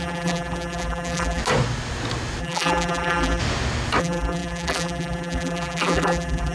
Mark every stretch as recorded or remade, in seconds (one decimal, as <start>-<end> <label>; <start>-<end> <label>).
0.0-1.4 remade; 1.4-2.4 recorded; 2.4-3.4 remade; 3.4-4.0 recorded; 4.0-6.5 remade